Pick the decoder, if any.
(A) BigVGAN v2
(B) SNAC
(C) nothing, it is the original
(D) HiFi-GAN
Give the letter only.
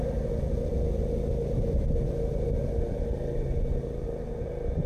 C